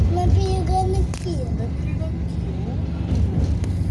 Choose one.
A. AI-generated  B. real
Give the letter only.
B